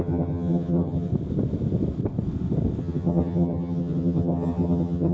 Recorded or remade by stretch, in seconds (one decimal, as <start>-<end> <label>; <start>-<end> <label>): 0.0-1.1 remade; 1.1-2.8 recorded; 2.8-5.1 remade